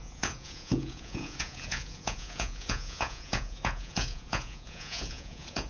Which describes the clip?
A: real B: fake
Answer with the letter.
B